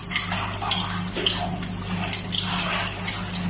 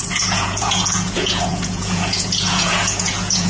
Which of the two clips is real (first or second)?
first